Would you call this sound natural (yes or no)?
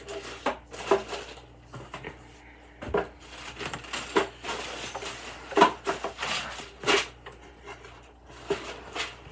yes